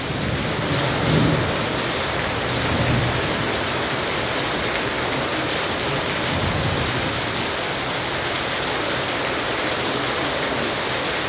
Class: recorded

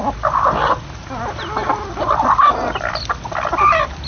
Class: recorded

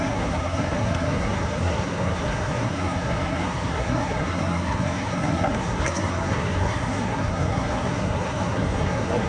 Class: remade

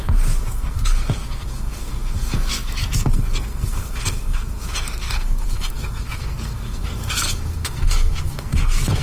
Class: remade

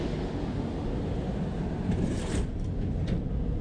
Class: recorded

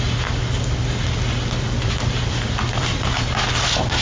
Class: recorded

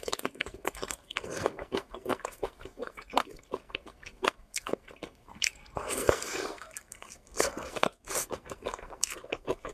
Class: remade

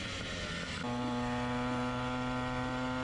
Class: recorded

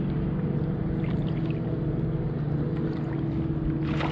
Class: recorded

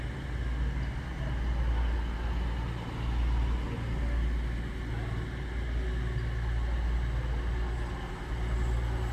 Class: recorded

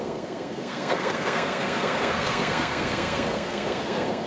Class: remade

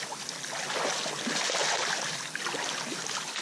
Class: recorded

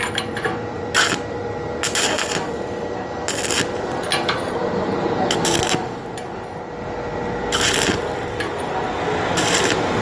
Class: recorded